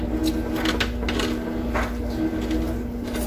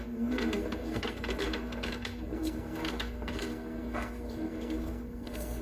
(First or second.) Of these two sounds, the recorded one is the first